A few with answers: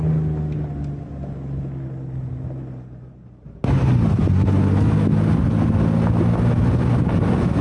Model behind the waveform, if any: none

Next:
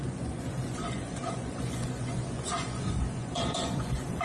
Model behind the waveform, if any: vocoder, Vocos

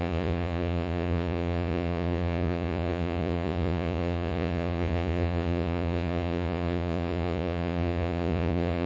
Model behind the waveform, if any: vocoder, Vocos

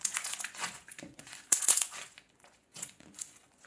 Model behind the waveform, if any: vocoder, Vocos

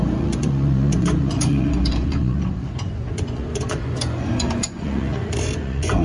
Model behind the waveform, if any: vocoder, Vocos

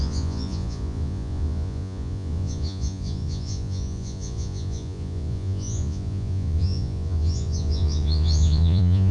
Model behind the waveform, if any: vocoder, Vocos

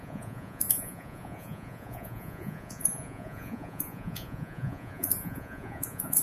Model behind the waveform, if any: vocoder, Vocos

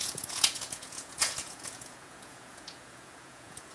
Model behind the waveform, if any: vocoder, Vocos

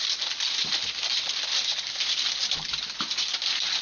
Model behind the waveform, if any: none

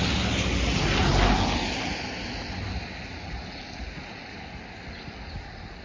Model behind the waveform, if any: none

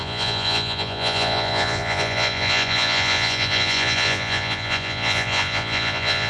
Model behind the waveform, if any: vocoder, Vocos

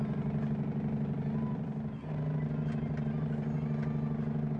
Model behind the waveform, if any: none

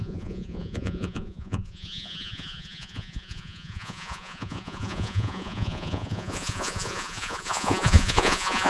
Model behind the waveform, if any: vocoder, Vocos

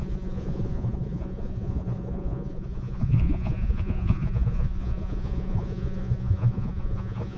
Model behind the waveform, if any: vocoder, Vocos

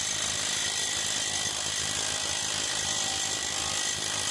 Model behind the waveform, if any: none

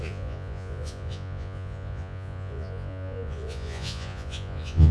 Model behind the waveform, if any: vocoder, Vocos